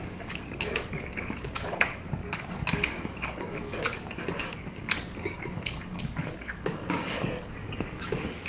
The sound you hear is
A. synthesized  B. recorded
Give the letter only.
A